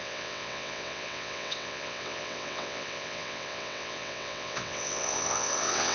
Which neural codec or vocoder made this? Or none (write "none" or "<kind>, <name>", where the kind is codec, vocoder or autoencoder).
vocoder, WaveNeXt